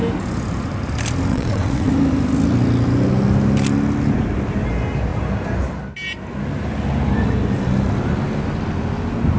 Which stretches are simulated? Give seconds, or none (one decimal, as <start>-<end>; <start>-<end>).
1.3-1.9